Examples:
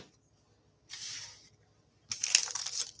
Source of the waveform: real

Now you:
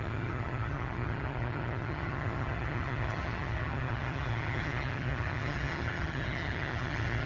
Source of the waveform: fake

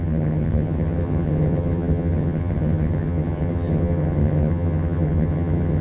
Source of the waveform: fake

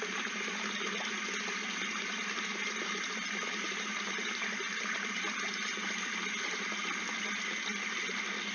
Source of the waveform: real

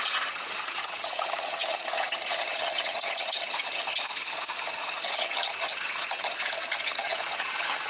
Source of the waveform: fake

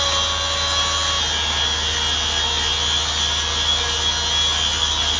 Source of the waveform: real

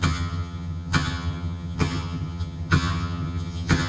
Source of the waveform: fake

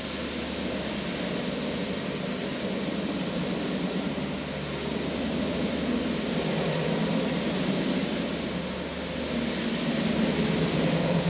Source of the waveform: real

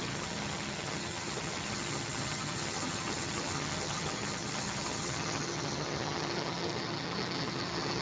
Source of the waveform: fake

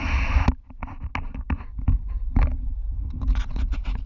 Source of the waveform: real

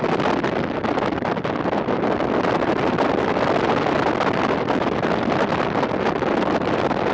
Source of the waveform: real